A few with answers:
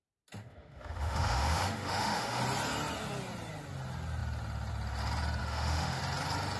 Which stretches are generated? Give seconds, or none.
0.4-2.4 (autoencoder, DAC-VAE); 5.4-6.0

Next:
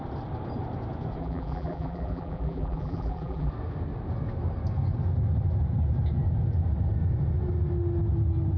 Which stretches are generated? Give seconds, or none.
1.2-3.5 (vocoder, BigVGAN v2)